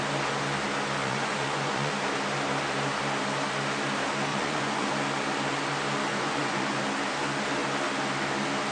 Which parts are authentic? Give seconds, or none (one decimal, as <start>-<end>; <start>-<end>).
0.0-1.0; 1.9-4.3; 4.9-6.1; 6.8-8.7